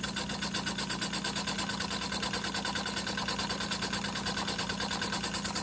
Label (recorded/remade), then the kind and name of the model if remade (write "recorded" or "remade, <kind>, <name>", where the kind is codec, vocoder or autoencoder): recorded